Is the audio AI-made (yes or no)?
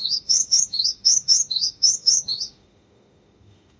yes